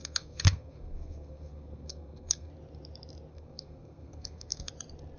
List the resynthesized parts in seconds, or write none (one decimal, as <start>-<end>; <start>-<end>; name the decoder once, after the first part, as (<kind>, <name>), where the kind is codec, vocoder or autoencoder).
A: 0.0-2.5 (codec, SNAC); 3.3-4.7